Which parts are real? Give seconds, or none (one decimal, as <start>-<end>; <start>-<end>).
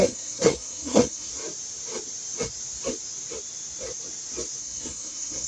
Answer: 1.3-4.6